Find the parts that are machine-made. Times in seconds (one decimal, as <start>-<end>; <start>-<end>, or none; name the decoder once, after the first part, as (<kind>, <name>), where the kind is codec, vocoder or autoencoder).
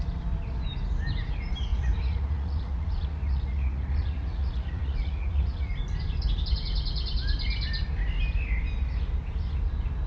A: 1.7-5.7 (vocoder, Vocos)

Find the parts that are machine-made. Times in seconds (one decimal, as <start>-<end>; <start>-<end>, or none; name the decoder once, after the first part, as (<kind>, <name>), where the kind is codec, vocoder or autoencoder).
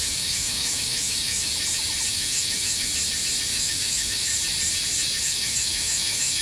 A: 0.0-1.5 (autoencoder, DAC-VAE); 2.1-2.9; 3.5-4.3; 5.2-6.4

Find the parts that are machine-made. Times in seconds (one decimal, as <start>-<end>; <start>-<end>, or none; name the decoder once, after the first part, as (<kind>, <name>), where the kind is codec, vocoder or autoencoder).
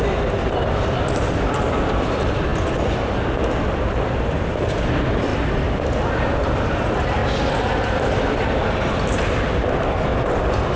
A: 0.0-7.2 (vocoder, BigVGAN v2); 8.9-10.1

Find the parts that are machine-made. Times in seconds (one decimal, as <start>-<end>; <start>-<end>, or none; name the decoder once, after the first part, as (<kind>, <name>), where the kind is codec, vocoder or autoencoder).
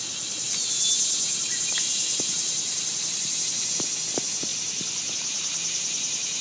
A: none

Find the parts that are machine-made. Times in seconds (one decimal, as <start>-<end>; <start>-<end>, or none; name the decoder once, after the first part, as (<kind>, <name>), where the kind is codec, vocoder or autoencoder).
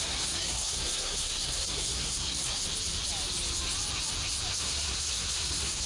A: 0.0-2.6 (codec, SNAC); 4.5-5.9